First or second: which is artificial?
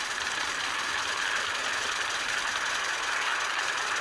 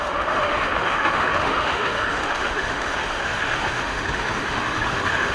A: second